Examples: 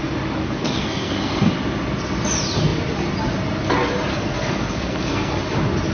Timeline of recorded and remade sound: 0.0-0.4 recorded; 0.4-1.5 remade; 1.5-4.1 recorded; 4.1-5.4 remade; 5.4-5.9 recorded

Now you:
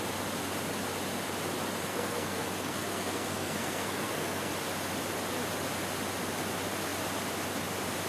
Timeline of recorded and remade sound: 0.0-1.9 recorded; 1.9-4.5 remade; 4.5-8.1 recorded

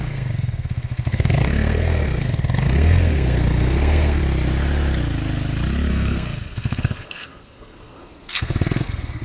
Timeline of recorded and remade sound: 0.0-4.2 remade; 4.2-5.9 recorded; 5.9-9.2 remade

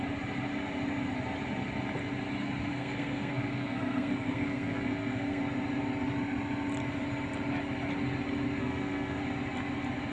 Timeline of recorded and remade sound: 0.0-2.7 recorded; 2.7-5.4 remade; 5.4-8.6 recorded; 8.6-9.2 remade; 9.2-10.1 recorded

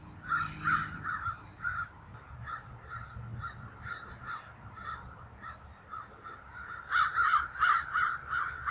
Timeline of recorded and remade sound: 0.0-8.7 recorded

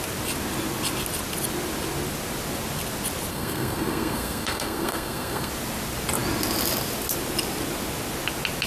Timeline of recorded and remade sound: 0.0-3.3 recorded; 3.3-5.5 remade; 5.5-8.7 recorded

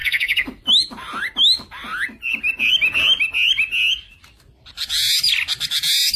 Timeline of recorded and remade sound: 0.0-0.6 remade; 0.6-6.2 recorded